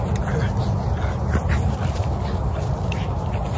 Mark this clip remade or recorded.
recorded